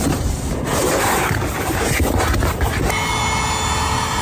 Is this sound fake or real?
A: real